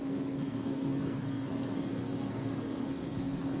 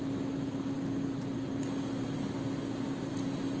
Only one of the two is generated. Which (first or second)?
first